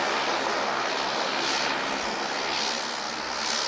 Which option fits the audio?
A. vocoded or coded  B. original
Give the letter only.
B